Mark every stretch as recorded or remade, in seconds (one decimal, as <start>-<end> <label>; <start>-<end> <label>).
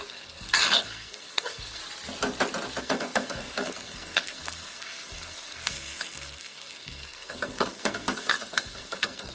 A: 0.0-1.8 remade; 1.8-2.8 recorded; 2.8-9.3 remade